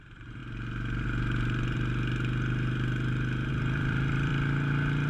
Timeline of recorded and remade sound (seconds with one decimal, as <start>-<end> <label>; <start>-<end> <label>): 0.0-0.4 remade; 0.4-3.5 recorded; 3.5-4.3 remade; 4.3-5.1 recorded